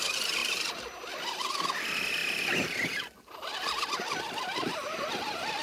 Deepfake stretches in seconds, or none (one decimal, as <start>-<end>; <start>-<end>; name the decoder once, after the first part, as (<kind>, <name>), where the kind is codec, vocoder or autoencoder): none